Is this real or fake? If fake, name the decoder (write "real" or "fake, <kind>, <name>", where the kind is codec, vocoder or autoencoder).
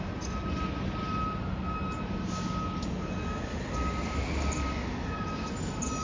real